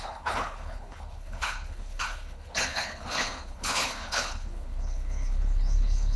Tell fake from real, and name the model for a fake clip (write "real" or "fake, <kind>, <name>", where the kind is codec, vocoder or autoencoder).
fake, codec, HILCodec